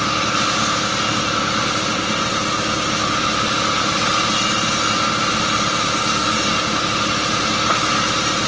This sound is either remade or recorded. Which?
recorded